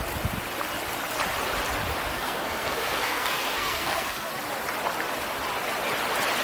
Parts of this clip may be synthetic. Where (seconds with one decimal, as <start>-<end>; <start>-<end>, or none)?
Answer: 2.1-4.3